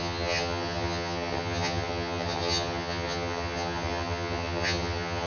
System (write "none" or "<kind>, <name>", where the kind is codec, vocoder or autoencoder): vocoder, HiFi-GAN